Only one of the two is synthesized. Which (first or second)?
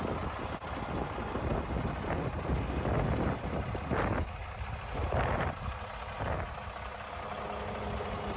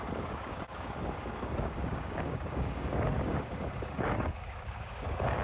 second